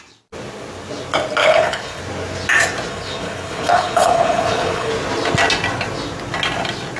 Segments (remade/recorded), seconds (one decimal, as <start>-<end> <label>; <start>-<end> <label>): 0.0-1.4 recorded; 1.4-2.0 remade; 2.0-2.9 recorded; 2.9-4.9 remade; 4.9-7.0 recorded